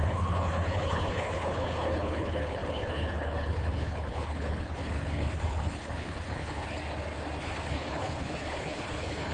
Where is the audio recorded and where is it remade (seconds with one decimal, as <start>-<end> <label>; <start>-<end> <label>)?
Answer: 0.0-6.8 remade; 6.8-7.4 recorded; 7.4-9.3 remade